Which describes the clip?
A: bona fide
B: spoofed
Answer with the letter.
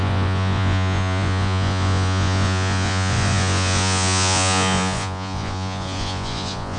B